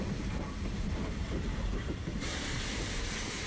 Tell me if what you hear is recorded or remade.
remade